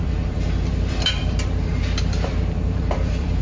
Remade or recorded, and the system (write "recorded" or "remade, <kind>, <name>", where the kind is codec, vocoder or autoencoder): remade, vocoder, BigVGAN v2